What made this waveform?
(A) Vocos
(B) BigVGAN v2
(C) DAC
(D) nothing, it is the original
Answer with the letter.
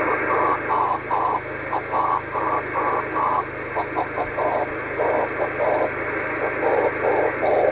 D